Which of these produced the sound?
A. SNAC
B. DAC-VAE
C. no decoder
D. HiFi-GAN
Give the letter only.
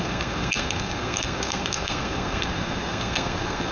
A